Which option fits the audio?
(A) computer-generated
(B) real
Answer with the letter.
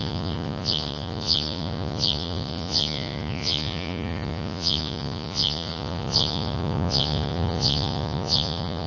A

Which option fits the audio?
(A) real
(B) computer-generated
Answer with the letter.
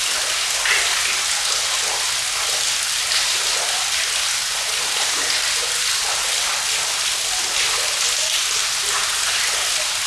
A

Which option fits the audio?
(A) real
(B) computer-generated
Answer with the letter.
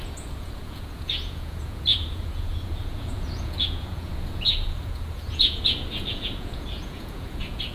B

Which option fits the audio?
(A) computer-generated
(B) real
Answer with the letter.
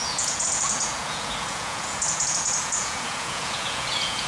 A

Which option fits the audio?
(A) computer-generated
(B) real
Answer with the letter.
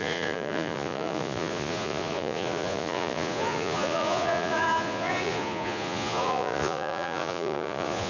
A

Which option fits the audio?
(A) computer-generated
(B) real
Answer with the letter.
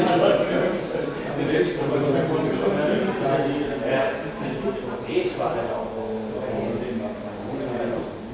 B